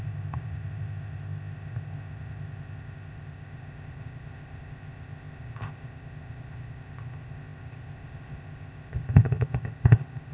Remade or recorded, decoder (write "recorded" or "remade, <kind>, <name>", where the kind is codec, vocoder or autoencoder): remade, codec, ZipCodec